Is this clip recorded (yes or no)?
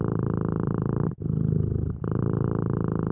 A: yes